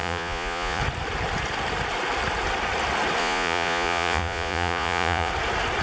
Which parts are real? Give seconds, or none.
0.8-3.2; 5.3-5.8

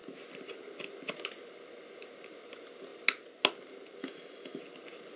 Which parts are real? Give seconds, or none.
0.0-4.0; 4.6-5.2

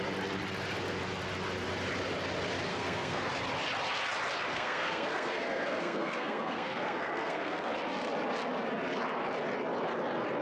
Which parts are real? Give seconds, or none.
0.0-2.7; 3.3-4.5; 7.7-10.4